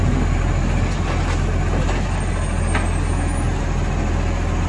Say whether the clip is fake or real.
real